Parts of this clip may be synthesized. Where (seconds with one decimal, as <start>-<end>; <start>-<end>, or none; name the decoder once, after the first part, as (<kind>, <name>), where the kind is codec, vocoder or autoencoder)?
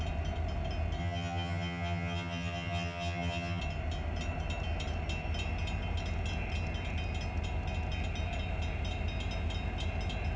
1.0-3.6 (vocoder, HiFi-GAN)